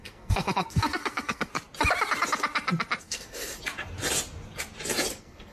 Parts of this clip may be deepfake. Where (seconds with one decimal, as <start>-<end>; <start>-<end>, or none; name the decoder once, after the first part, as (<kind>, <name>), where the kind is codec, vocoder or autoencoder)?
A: 0.0-1.5 (codec, SNAC); 3.0-3.6; 5.1-5.5